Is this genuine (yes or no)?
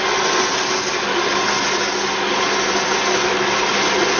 yes